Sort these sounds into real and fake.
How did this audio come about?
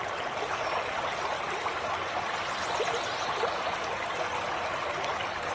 real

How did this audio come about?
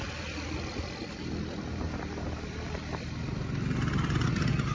real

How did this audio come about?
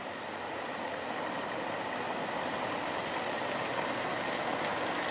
real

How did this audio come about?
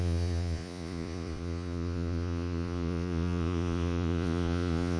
fake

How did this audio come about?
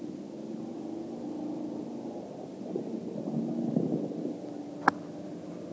real